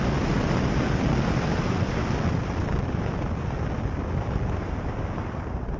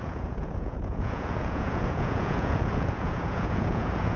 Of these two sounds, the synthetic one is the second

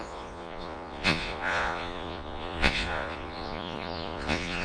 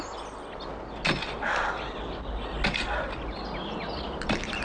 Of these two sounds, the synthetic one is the first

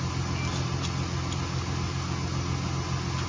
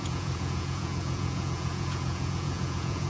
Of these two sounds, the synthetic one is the second